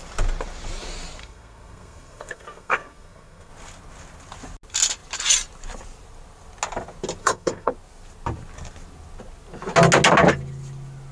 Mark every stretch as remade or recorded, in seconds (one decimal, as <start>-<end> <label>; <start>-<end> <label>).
0.0-1.2 recorded; 1.2-3.5 remade; 3.5-7.2 recorded; 7.2-7.7 remade; 7.7-11.1 recorded